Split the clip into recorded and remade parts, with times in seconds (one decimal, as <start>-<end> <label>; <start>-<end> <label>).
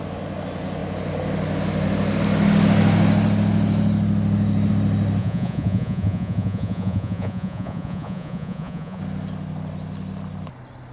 0.0-5.2 recorded; 5.2-9.0 remade; 9.0-10.9 recorded